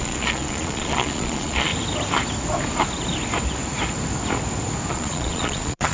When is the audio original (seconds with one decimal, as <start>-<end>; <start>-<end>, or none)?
1.7-4.9